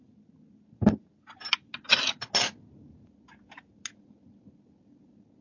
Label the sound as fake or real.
real